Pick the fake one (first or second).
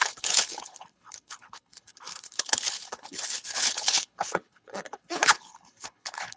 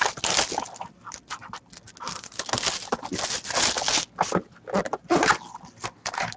first